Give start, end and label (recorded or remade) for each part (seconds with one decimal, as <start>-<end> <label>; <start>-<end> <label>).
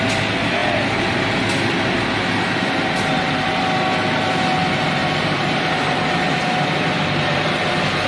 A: 0.0-5.0 recorded; 5.0-8.1 remade